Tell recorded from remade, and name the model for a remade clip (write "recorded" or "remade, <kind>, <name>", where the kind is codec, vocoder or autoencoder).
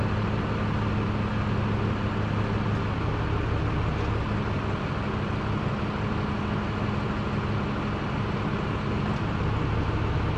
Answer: recorded